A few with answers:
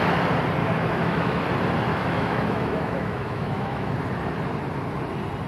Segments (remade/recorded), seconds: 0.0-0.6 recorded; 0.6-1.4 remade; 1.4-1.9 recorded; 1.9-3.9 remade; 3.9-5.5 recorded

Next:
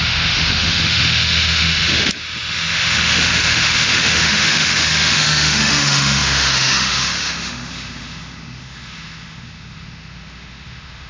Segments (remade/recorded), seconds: 0.0-11.1 remade

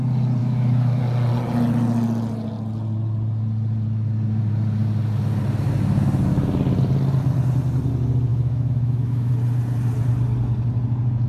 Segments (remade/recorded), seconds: 0.0-0.4 recorded; 0.4-1.0 remade; 1.0-8.3 recorded; 8.3-9.3 remade; 9.3-11.3 recorded

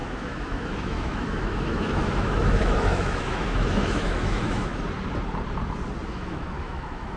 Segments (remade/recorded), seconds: 0.0-4.7 remade; 4.7-6.1 recorded; 6.1-7.2 remade

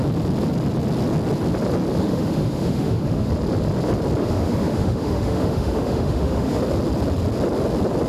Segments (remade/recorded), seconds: 0.0-2.0 recorded; 2.0-3.3 remade; 3.3-4.2 recorded; 4.2-6.6 remade; 6.6-8.1 recorded

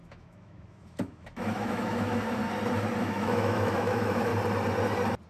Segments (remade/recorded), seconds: 0.0-2.4 remade; 2.4-3.0 recorded; 3.0-4.3 remade; 4.3-5.3 recorded

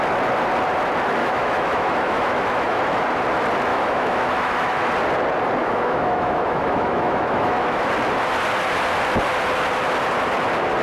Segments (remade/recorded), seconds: 0.0-1.2 recorded; 1.2-2.8 remade; 2.8-3.7 recorded; 3.7-4.9 remade; 4.9-5.6 recorded; 5.6-7.9 remade; 7.9-10.8 recorded

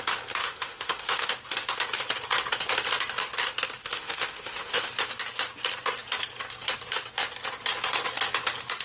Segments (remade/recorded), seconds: 0.0-0.4 recorded; 0.4-1.3 remade; 1.3-3.8 recorded; 3.8-4.9 remade; 4.9-8.8 recorded